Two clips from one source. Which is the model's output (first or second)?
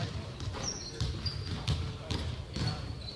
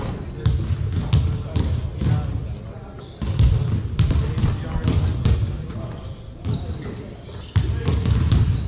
first